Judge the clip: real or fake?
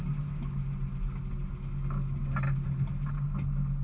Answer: real